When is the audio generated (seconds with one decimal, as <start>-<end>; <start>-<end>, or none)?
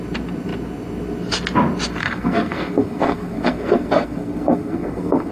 2.0-5.3